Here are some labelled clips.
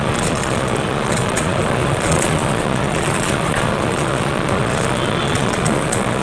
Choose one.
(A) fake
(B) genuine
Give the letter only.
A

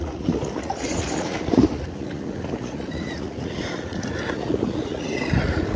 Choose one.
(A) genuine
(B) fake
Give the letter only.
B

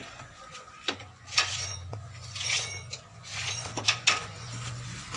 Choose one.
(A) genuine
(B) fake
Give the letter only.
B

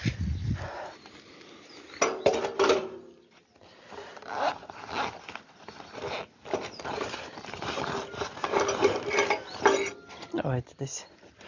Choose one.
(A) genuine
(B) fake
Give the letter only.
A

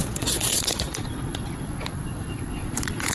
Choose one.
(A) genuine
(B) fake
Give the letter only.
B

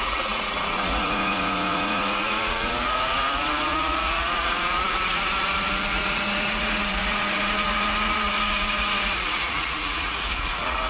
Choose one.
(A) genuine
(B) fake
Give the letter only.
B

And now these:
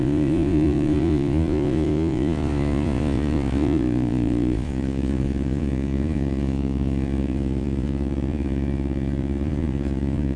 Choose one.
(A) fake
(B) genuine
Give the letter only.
A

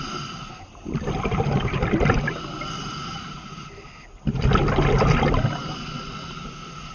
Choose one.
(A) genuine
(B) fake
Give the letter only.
A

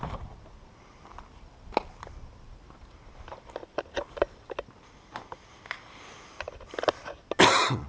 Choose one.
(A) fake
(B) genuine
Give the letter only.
B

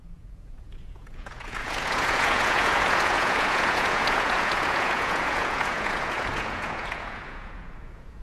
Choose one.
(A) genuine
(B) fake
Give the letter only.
B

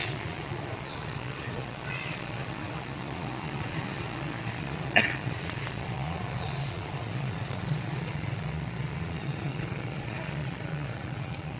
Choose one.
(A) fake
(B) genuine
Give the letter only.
A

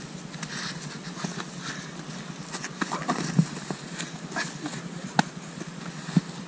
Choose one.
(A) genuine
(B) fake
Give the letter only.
A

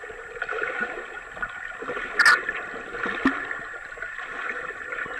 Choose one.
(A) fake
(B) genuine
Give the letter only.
B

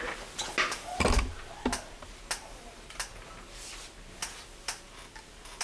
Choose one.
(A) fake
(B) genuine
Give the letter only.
B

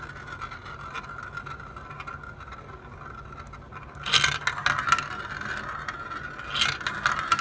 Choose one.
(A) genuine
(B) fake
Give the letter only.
A